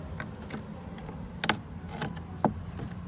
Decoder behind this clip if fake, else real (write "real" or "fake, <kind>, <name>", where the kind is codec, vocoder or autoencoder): real